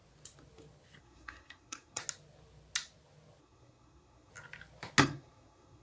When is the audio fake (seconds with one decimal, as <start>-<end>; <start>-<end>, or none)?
1.0-2.0; 3.4-4.3; 5.0-5.8